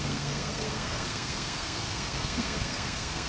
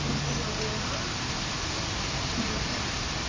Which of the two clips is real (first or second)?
second